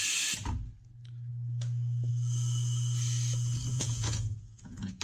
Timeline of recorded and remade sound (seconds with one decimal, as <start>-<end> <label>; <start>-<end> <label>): 0.0-3.7 recorded; 3.7-5.0 remade